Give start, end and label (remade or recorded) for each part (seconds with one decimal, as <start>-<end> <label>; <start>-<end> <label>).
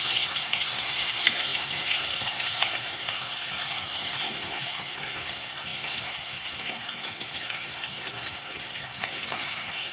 0.0-9.9 remade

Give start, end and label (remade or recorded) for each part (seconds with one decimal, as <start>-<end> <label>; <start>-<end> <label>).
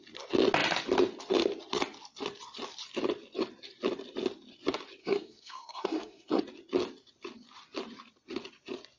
0.0-5.0 recorded; 5.0-6.4 remade; 6.4-9.0 recorded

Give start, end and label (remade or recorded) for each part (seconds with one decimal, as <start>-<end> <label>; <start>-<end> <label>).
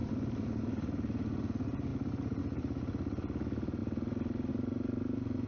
0.0-5.5 recorded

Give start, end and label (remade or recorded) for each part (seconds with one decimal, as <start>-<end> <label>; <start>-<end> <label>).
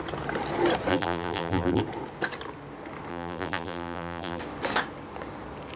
0.0-0.9 recorded; 0.9-1.8 remade; 1.8-3.1 recorded; 3.1-4.4 remade; 4.4-5.8 recorded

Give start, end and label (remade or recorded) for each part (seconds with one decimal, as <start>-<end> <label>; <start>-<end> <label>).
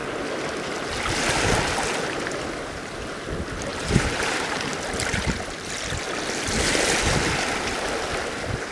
0.0-3.7 recorded; 3.7-4.7 remade; 4.7-8.7 recorded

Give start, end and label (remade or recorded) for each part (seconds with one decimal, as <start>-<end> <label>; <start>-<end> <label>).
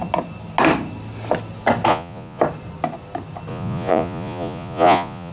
0.0-1.9 recorded; 1.9-2.4 remade; 2.4-3.5 recorded; 3.5-5.3 remade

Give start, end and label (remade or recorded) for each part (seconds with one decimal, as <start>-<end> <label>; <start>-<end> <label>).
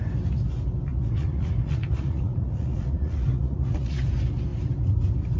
0.0-0.9 recorded; 0.9-4.1 remade; 4.1-5.4 recorded